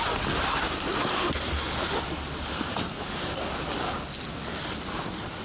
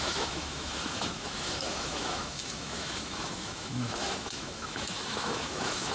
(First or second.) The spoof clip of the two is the second